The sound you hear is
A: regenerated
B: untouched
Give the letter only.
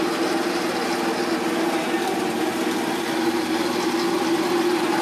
B